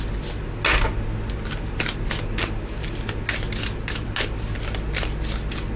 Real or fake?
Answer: real